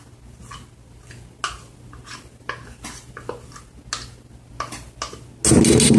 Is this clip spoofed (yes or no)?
no